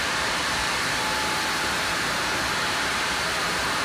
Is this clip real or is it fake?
fake